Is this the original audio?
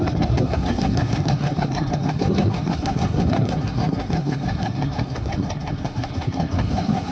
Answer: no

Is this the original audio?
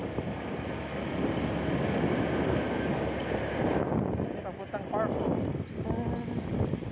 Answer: yes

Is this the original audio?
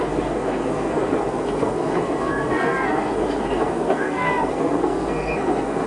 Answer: no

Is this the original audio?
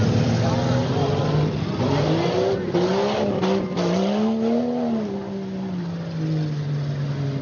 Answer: yes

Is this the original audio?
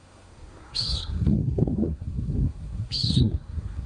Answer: no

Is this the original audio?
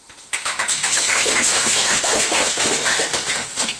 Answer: no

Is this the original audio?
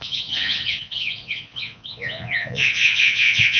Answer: no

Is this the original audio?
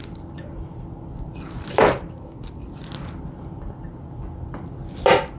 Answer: yes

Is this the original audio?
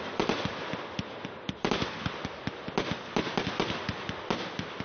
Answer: yes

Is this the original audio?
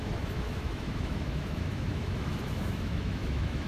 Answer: no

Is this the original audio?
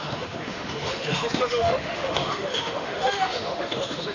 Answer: no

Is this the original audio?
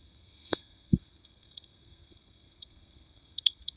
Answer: no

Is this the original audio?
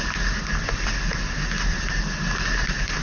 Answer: yes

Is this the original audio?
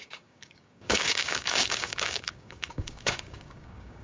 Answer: no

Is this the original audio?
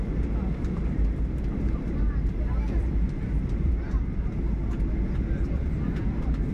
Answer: no